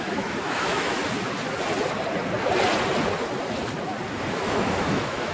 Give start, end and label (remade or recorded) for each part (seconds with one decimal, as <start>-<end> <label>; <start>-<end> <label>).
0.0-1.0 remade; 1.0-4.2 recorded; 4.2-5.3 remade